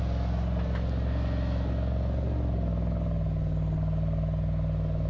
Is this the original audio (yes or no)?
yes